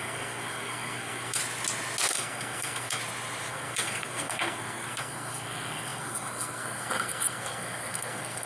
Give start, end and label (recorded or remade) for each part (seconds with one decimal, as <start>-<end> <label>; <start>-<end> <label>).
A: 0.0-1.4 remade; 1.4-2.1 recorded; 2.1-3.0 remade; 3.0-3.5 recorded; 3.5-8.5 remade